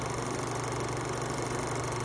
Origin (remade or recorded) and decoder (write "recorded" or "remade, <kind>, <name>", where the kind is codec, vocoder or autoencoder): recorded